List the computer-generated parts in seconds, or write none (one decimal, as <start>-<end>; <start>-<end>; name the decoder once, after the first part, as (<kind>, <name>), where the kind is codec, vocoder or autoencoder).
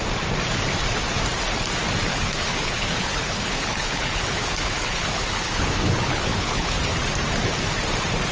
2.1-6.8 (codec, HILCodec)